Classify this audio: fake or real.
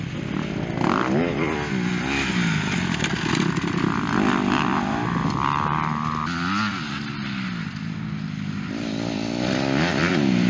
real